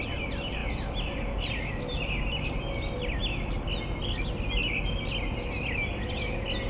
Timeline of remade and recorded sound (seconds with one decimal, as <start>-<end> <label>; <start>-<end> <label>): 0.0-6.7 recorded

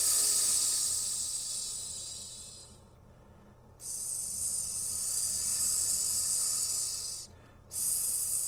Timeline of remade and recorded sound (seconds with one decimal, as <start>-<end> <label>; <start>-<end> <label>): 0.0-8.5 recorded

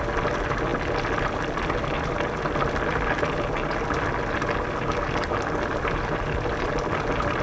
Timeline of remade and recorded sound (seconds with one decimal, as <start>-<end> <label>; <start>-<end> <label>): 0.0-7.4 recorded

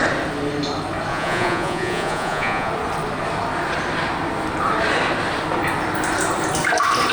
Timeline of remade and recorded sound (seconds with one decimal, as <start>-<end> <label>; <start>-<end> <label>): 0.0-1.1 recorded; 1.1-2.7 remade; 2.7-7.1 recorded

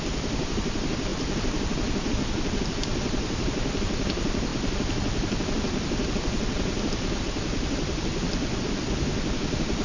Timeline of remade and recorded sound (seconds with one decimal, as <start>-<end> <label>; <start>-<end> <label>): 0.0-9.8 recorded

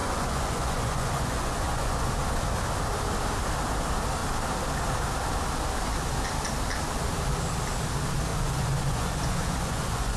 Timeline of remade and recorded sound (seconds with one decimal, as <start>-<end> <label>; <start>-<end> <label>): 0.0-2.1 remade; 2.1-8.3 recorded; 8.3-10.2 remade

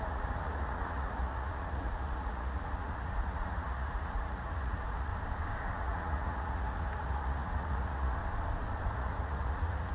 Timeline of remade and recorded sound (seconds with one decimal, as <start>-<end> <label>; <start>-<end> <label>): 0.0-5.1 remade; 5.1-5.6 recorded; 5.6-8.2 remade; 8.2-8.9 recorded; 8.9-9.9 remade